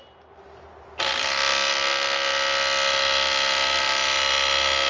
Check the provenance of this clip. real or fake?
real